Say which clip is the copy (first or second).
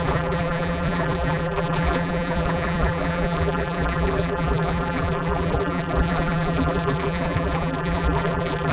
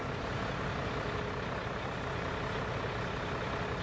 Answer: first